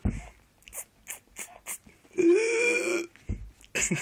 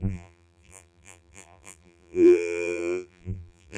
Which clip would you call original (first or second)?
first